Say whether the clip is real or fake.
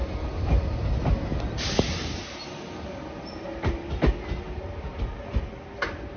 real